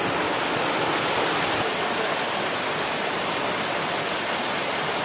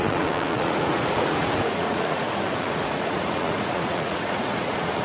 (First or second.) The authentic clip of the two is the first